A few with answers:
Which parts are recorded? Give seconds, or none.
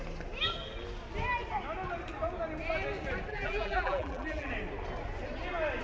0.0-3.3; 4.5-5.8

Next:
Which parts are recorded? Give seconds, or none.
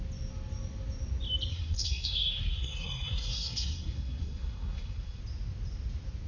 0.0-1.5; 5.2-6.3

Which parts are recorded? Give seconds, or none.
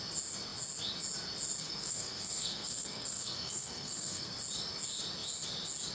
0.0-1.6; 4.3-5.9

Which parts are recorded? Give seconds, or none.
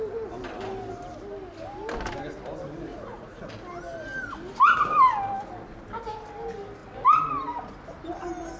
0.0-2.9; 3.5-8.6